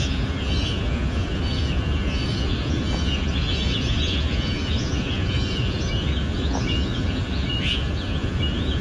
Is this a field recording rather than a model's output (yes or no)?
no